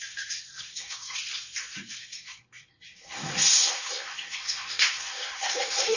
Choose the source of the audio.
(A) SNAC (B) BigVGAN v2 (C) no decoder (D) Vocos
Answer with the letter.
A